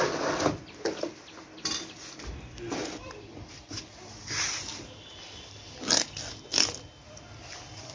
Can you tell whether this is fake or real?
real